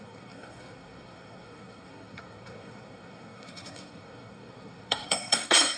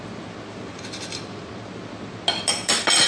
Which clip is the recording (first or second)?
second